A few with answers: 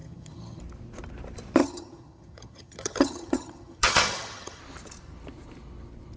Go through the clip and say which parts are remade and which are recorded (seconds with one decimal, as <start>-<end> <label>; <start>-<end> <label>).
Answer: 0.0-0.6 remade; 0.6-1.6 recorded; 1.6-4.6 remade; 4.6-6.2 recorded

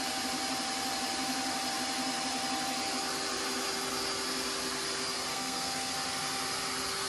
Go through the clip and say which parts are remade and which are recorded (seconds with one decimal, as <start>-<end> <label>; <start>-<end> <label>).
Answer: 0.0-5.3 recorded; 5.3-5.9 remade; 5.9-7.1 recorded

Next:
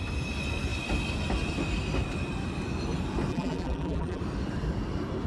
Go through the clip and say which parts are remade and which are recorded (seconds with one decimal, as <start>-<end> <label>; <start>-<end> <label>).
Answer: 0.0-3.3 recorded; 3.3-4.2 remade; 4.2-5.3 recorded

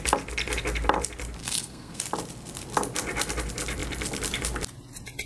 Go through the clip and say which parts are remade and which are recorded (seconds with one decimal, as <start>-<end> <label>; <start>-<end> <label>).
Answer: 0.0-1.4 recorded; 1.4-2.0 remade; 2.0-5.3 recorded

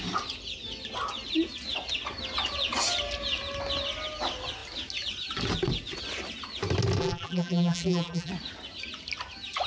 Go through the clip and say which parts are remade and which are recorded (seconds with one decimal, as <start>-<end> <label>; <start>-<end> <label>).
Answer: 0.0-7.0 recorded; 7.0-8.3 remade; 8.3-9.7 recorded

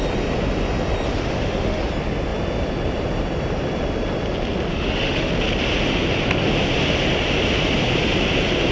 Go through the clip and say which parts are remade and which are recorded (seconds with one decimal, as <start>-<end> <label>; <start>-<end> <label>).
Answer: 0.0-1.2 recorded; 1.2-1.8 remade; 1.8-4.7 recorded; 4.7-5.3 remade; 5.3-8.7 recorded